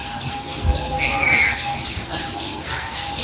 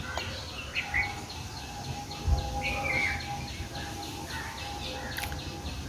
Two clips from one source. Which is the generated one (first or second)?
first